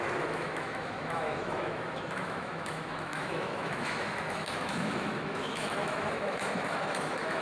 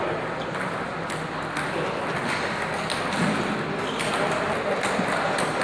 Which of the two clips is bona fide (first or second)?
second